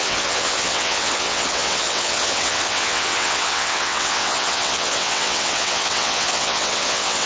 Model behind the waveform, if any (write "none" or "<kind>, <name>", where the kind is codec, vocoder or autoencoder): vocoder, WaveNeXt